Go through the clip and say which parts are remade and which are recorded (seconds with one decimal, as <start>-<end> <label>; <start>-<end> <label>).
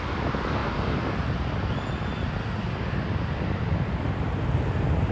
0.0-5.1 recorded